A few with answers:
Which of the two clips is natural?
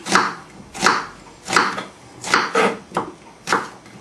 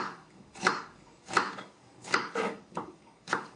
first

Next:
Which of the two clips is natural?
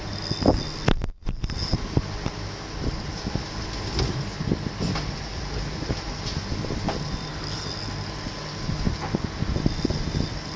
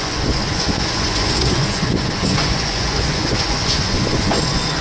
first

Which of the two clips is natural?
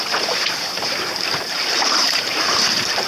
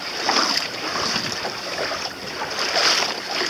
second